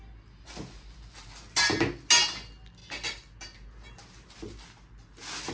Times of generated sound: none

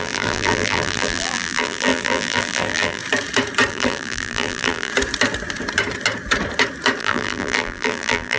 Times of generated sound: 0.0-3.0 (vocoder, BigVGAN v2); 3.7-4.9; 7.0-8.4

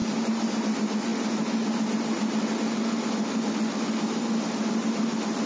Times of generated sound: 0.0-0.6 (vocoder, BigVGAN v2)